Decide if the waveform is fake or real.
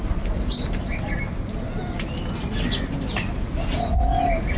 real